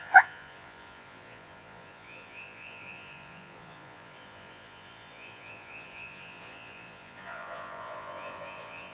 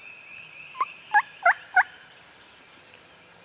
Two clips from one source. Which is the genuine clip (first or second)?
second